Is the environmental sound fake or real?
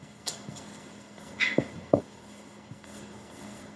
fake